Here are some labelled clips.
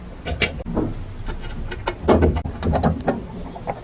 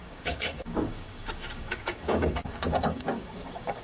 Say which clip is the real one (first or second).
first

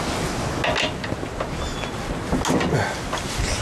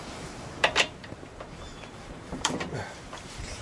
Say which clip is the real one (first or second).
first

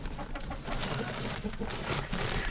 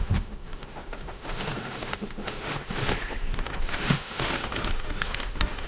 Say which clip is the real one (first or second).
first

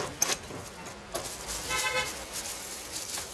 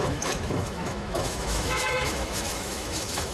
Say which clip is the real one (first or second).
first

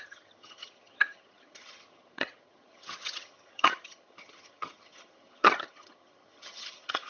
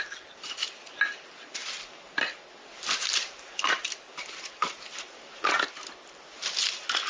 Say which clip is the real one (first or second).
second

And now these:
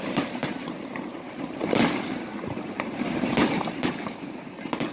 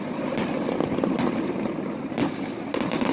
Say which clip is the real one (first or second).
second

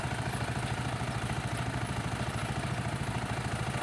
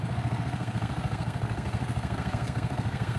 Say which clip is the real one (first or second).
first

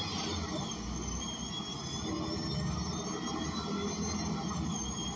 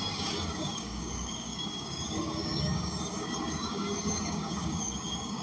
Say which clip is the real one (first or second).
first